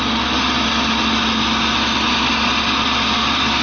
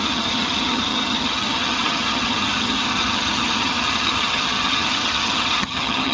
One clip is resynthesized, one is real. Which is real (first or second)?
first